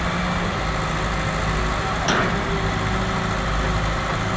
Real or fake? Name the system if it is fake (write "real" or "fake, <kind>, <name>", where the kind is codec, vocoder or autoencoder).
real